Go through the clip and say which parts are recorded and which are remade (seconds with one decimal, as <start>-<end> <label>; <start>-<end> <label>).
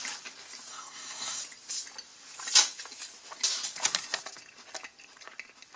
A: 0.0-0.7 recorded; 0.7-1.4 remade; 1.4-5.8 recorded